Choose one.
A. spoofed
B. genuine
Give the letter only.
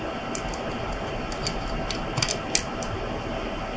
B